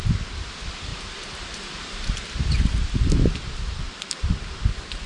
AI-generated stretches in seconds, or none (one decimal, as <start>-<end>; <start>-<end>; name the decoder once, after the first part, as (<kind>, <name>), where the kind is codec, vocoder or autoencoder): 0.9-3.5 (vocoder, BigVGAN v2)